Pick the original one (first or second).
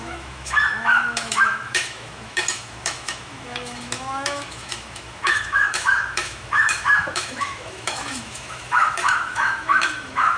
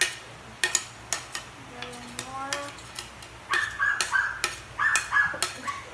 second